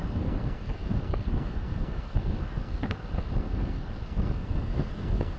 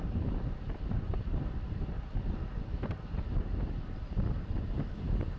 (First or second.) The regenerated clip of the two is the first